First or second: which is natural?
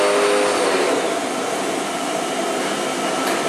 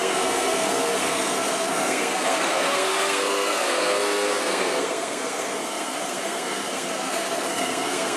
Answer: first